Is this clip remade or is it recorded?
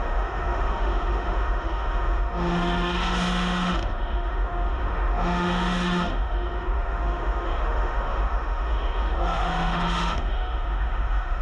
remade